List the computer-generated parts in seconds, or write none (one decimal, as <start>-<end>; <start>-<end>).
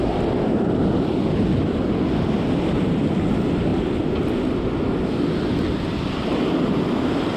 none